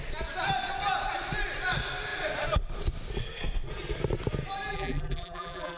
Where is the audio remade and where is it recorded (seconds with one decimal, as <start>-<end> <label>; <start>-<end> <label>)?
0.0-4.7 recorded; 4.7-5.8 remade